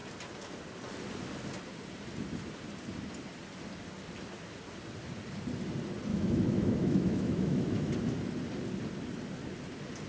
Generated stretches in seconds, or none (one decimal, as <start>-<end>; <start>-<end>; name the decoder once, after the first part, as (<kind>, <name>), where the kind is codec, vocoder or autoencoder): 6.1-7.9 (autoencoder, DAC-VAE)

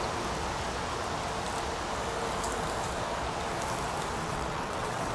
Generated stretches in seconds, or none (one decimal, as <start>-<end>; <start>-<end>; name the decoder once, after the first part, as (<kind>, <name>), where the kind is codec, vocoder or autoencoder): 4.2-5.1 (vocoder, WaveNeXt)